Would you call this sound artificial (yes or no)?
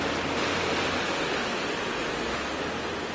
no